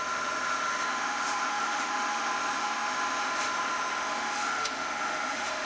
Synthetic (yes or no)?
yes